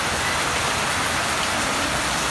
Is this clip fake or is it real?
real